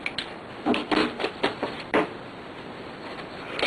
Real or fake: real